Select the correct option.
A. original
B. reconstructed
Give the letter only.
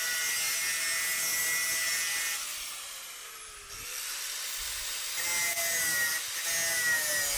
A